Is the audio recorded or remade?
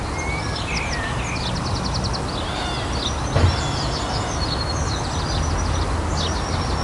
recorded